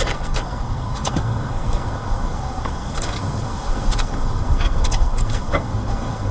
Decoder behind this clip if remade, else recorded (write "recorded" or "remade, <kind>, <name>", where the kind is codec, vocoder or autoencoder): remade, codec, SNAC